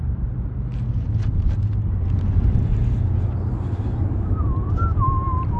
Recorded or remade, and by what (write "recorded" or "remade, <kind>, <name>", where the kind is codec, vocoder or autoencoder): recorded